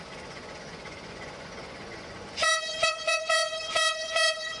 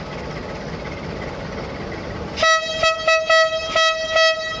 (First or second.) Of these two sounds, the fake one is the first